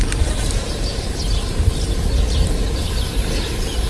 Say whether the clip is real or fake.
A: real